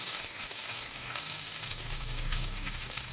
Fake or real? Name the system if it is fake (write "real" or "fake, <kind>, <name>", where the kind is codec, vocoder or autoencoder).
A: fake, codec, DAC